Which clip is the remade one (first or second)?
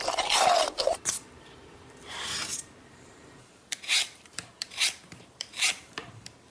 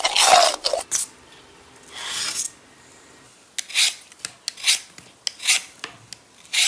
first